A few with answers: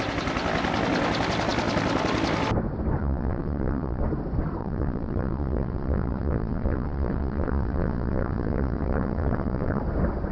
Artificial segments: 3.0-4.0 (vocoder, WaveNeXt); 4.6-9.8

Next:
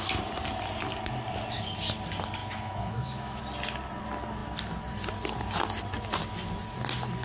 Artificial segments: 2.4-3.4 (autoencoder, DAC-VAE)

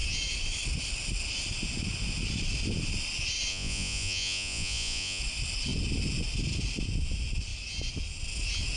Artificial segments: 3.5-5.2 (vocoder, Vocos)